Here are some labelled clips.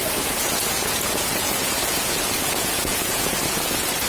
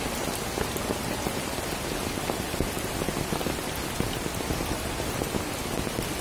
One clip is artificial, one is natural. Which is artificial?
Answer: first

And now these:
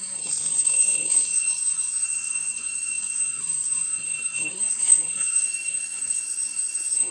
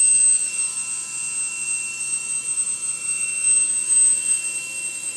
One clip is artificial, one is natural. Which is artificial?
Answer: first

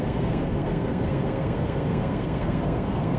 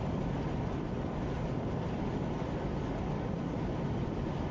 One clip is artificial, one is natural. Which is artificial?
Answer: first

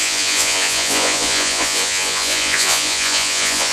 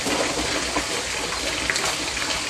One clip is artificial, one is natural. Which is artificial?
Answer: first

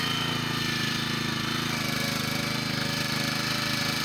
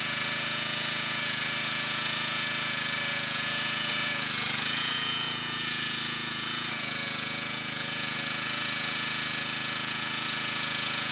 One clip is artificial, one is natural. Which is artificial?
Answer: second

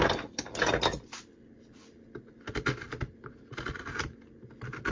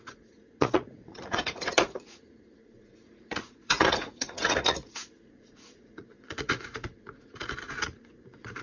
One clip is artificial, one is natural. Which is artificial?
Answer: second